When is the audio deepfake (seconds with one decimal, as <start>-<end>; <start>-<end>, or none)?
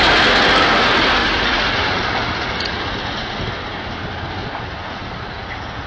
1.2-3.4; 4.4-5.9